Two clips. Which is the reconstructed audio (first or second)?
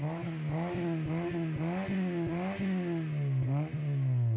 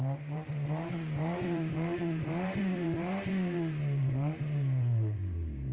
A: second